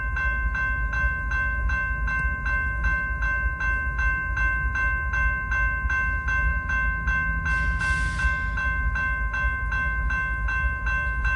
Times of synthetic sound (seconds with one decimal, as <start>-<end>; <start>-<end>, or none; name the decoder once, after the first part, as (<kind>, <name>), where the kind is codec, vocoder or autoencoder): none